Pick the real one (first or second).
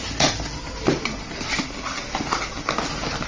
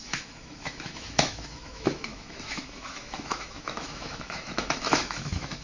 first